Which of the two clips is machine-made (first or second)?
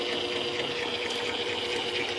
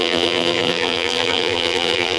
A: second